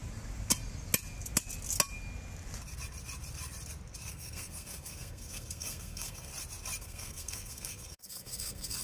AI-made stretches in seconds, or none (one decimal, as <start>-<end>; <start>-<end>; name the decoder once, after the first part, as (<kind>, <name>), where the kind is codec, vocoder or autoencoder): 4.1-6.3 (codec, SNAC); 6.8-8.8